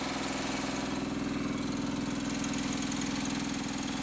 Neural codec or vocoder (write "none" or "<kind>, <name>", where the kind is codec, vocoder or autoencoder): none